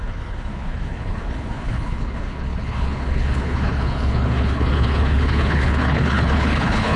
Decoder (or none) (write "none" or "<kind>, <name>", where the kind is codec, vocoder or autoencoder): codec, HILCodec